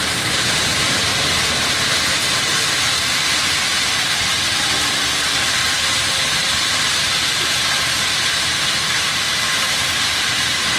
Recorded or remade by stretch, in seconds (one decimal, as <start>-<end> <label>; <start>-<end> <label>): 0.0-1.1 remade; 1.1-6.3 recorded; 6.3-10.8 remade